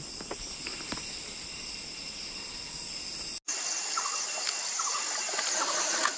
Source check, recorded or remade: recorded